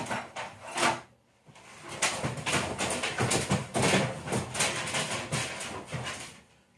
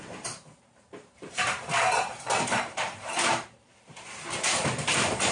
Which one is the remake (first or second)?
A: second